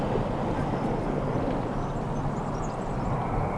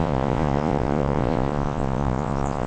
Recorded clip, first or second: first